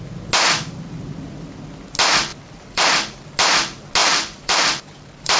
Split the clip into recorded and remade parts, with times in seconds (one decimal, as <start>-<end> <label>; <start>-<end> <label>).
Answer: 0.0-2.3 recorded; 2.3-3.3 remade; 3.3-4.0 recorded; 4.0-5.4 remade